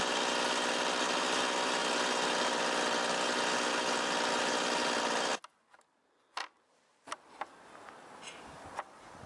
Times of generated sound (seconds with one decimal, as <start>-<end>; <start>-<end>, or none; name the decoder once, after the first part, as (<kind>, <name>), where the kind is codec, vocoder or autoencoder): none